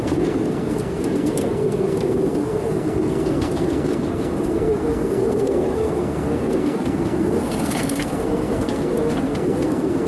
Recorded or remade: remade